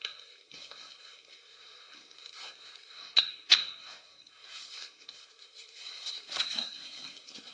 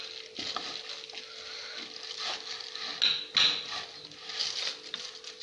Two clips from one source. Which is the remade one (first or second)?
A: first